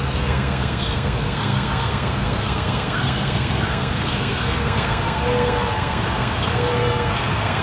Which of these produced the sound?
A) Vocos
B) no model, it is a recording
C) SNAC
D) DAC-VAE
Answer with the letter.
C